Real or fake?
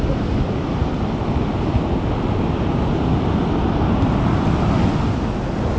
real